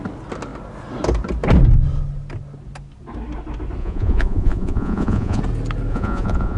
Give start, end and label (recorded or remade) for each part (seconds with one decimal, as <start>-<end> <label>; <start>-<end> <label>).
0.0-3.8 recorded; 3.8-5.4 remade; 5.4-5.9 recorded; 5.9-6.6 remade